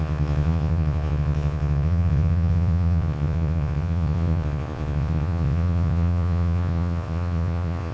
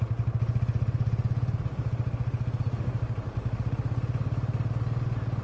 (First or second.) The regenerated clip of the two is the first